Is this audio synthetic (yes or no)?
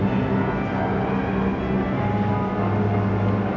no